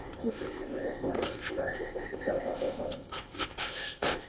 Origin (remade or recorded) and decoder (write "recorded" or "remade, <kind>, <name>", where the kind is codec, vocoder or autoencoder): remade, codec, ZipCodec